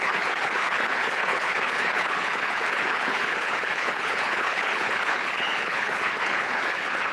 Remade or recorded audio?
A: remade